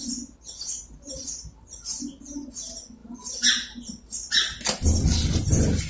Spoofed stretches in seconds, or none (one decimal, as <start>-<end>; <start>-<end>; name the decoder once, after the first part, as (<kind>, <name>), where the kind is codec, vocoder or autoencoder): none